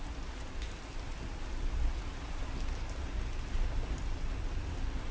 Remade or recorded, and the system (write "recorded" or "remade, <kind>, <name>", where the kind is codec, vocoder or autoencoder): recorded